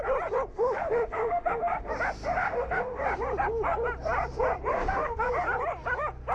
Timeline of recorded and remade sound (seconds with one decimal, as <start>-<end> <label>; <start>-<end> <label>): 0.0-0.5 recorded; 0.5-1.9 remade; 1.9-2.4 recorded; 2.4-3.0 remade; 3.0-4.7 recorded; 4.7-5.3 remade; 5.3-6.3 recorded